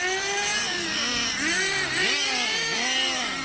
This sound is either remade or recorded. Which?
recorded